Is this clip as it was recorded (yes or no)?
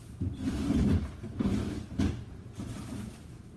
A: yes